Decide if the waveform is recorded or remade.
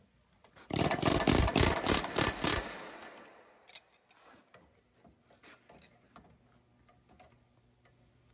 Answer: recorded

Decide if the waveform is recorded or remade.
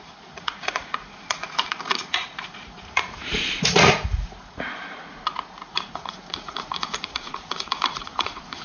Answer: remade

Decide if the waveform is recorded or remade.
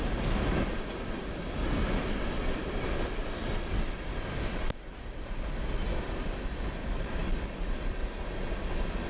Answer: recorded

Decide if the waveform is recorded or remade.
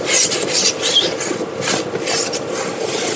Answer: recorded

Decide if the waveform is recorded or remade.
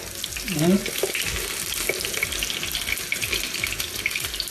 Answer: recorded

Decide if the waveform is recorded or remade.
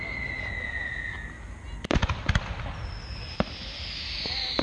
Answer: recorded